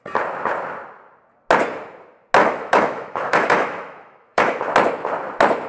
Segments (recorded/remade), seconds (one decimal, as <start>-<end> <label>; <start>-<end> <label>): 0.0-2.4 recorded; 2.4-4.6 remade; 4.6-5.7 recorded